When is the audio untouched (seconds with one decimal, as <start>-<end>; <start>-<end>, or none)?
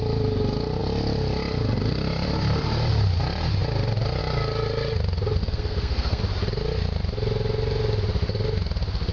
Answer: 0.0-5.4; 6.2-9.1